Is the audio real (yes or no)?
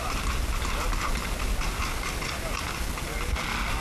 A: yes